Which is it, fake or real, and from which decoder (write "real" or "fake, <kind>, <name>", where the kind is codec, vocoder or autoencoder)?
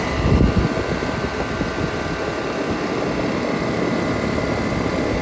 real